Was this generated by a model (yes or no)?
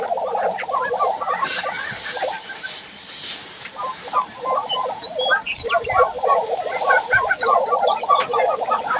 yes